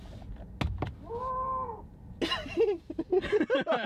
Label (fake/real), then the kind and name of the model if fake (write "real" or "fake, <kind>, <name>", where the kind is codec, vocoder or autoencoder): real